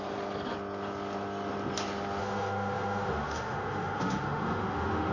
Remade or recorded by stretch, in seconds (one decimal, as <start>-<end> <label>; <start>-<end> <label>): 0.0-2.2 recorded; 2.2-5.1 remade